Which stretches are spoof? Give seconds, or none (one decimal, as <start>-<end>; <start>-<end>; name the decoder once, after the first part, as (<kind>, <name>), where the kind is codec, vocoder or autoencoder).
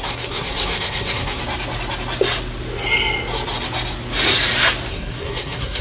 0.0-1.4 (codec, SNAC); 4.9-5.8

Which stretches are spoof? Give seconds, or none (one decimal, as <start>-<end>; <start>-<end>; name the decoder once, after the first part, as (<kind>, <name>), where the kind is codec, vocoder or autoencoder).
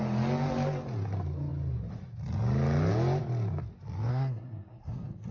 4.1-5.3 (codec, SNAC)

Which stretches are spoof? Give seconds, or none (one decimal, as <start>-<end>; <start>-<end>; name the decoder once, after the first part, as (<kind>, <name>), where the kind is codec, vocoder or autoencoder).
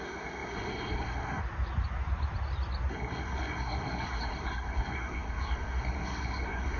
0.0-1.4 (codec, SNAC); 2.9-6.8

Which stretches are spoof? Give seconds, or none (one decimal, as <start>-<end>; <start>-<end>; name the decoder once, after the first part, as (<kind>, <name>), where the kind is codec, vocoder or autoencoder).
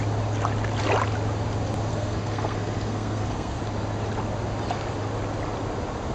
1.9-3.6 (codec, SNAC)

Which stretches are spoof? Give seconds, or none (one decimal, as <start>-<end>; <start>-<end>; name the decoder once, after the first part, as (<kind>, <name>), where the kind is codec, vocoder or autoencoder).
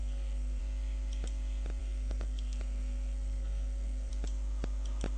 0.0-0.6 (codec, SNAC); 1.8-4.1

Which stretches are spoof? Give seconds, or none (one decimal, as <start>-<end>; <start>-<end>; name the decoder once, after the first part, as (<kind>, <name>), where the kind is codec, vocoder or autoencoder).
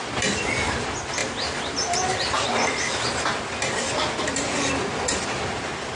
none